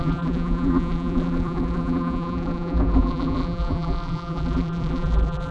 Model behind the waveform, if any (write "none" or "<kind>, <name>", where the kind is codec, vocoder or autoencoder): vocoder, BigVGAN v2